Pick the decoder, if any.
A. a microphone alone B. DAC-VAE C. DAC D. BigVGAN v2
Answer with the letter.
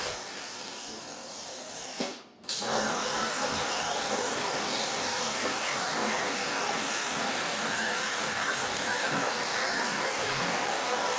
C